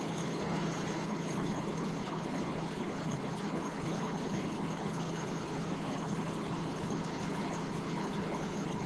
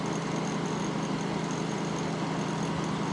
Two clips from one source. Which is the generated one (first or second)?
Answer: first